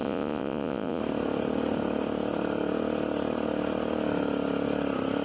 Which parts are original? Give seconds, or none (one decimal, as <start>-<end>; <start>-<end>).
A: 1.0-5.2